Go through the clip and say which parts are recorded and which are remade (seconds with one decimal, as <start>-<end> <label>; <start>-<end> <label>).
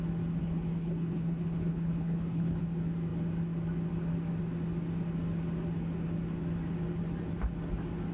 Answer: 0.0-0.4 recorded; 0.4-2.6 remade; 2.6-8.1 recorded